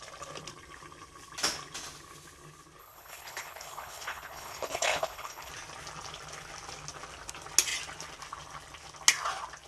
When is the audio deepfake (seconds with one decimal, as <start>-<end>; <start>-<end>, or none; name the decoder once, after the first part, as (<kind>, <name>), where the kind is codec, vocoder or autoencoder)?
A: 2.8-5.5 (codec, HILCodec)